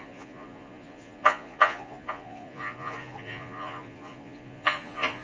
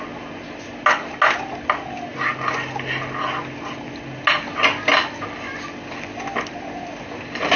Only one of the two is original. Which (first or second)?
second